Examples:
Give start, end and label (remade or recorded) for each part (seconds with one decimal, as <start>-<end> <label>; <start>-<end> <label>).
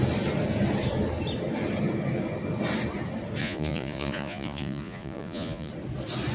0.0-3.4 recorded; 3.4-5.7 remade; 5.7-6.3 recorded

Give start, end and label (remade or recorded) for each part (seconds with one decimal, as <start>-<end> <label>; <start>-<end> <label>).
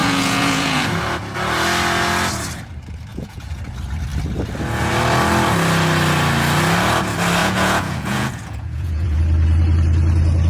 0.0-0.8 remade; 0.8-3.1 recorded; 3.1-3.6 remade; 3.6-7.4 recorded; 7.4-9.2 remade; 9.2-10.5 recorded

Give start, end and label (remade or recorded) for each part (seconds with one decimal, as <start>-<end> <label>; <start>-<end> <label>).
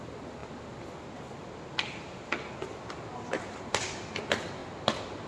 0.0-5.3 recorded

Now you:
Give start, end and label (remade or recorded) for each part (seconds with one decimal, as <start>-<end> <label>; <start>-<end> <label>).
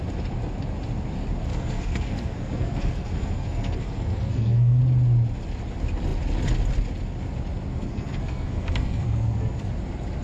0.0-1.5 recorded; 1.5-4.8 remade; 4.8-7.7 recorded; 7.7-9.7 remade; 9.7-10.2 recorded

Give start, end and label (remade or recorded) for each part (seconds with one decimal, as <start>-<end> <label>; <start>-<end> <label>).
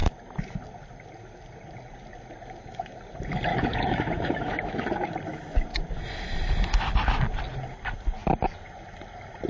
0.0-3.5 recorded; 3.5-5.1 remade; 5.1-9.5 recorded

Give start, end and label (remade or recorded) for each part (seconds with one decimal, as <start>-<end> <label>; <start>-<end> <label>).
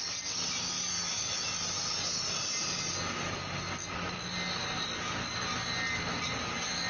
0.0-6.9 recorded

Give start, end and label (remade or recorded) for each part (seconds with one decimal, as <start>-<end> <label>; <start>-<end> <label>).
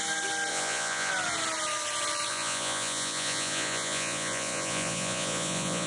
0.0-0.5 recorded; 0.5-1.1 remade; 1.1-2.3 recorded; 2.3-5.9 remade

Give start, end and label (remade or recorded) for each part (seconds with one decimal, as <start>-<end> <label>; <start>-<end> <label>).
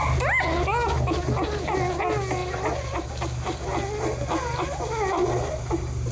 0.0-2.4 recorded; 2.4-3.1 remade; 3.1-5.2 recorded; 5.2-6.1 remade